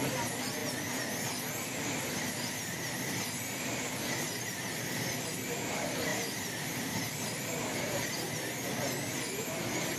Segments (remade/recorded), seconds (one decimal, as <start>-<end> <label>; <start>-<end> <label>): 0.0-6.1 recorded; 6.1-8.1 remade; 8.1-10.0 recorded